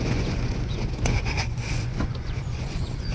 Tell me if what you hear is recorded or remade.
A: remade